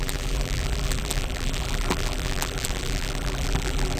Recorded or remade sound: remade